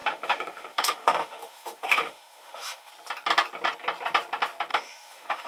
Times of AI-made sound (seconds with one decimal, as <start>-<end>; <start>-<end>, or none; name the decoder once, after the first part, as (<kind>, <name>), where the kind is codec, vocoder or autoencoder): 0.0-2.9 (autoencoder, DAC-VAE); 4.7-5.5